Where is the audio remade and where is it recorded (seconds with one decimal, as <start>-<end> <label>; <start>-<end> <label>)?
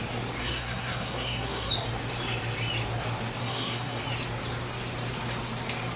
0.0-0.4 recorded; 0.4-1.7 remade; 1.7-3.4 recorded; 3.4-4.0 remade; 4.0-6.0 recorded